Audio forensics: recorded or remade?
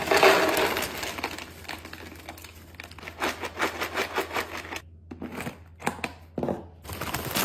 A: recorded